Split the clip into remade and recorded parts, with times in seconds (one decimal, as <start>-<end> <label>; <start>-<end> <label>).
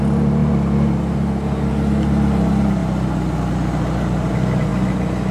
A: 0.0-5.3 recorded